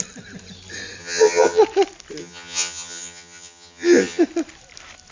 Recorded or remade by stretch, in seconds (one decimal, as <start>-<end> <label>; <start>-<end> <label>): 0.0-1.0 recorded; 1.0-1.6 remade; 1.6-2.2 recorded; 2.2-4.2 remade; 4.2-5.1 recorded